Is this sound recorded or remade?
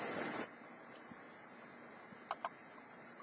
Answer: recorded